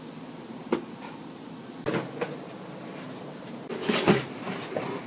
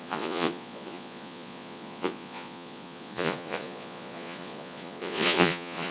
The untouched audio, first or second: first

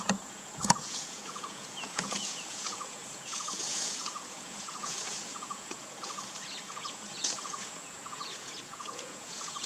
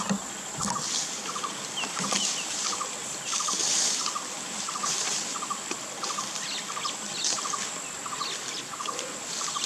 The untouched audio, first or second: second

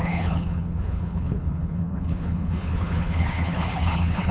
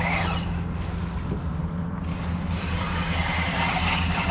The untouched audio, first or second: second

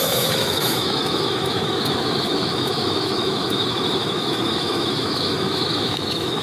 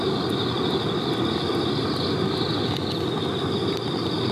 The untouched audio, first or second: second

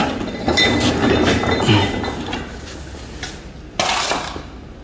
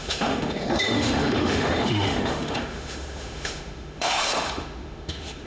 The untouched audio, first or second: first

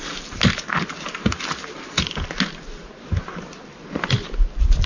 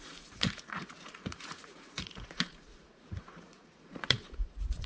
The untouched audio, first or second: first